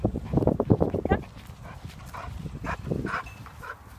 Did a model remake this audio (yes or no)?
no